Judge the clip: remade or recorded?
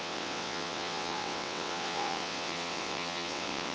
remade